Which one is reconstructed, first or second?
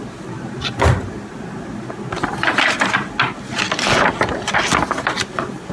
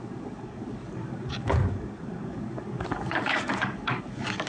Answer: second